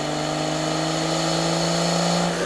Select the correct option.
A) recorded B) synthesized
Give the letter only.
A